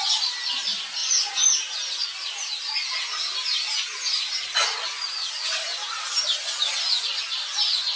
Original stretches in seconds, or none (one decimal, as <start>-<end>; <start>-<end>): 0.0-8.0